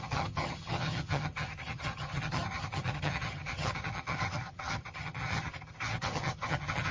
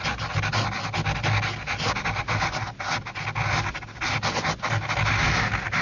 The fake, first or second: first